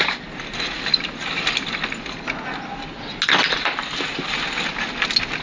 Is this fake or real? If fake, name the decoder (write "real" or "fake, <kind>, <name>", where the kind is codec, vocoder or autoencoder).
real